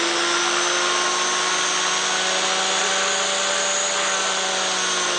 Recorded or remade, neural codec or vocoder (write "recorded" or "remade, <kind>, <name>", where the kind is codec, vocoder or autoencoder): recorded